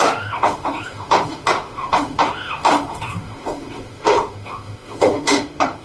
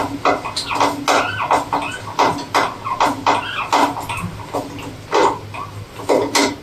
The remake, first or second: first